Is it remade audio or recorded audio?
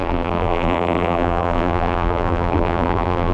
remade